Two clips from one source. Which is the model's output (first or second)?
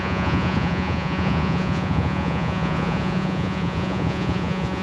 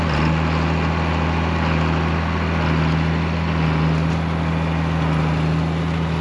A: first